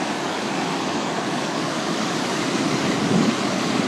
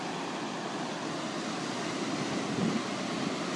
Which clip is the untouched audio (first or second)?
second